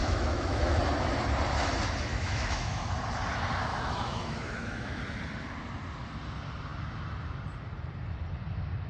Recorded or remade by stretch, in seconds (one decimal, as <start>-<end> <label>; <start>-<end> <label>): 0.0-0.8 remade; 0.8-2.1 recorded; 2.1-2.8 remade; 2.8-3.7 recorded; 3.7-5.0 remade; 5.0-8.9 recorded